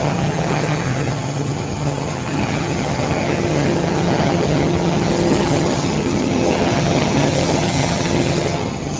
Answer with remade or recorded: remade